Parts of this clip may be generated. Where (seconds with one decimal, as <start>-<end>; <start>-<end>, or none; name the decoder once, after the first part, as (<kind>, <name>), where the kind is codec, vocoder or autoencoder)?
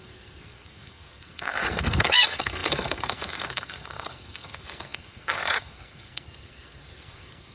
0.0-7.5 (codec, SNAC)